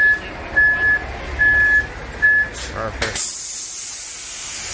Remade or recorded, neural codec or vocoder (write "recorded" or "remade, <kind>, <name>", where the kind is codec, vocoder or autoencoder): recorded